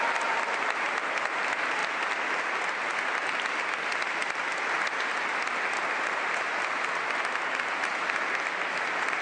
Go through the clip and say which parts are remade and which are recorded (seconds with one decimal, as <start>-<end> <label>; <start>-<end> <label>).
0.0-9.2 recorded